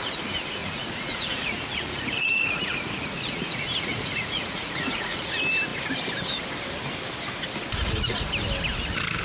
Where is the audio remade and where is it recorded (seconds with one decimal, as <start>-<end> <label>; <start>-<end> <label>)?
0.0-0.6 recorded; 0.6-5.3 remade; 5.3-9.2 recorded